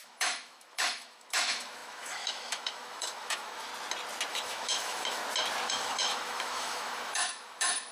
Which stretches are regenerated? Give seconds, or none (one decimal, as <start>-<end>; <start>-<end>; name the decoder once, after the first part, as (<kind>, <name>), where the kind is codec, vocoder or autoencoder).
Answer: 0.0-3.7 (autoencoder, DAC-VAE); 4.3-5.2; 5.7-7.9